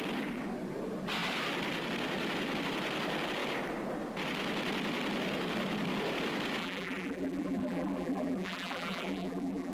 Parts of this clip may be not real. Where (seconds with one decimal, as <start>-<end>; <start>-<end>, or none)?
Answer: 6.6-9.7